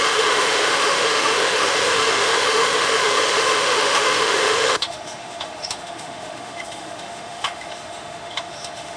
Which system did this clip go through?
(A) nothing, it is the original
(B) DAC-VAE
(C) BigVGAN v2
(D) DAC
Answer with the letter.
B